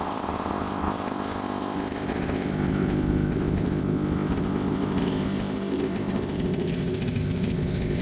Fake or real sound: fake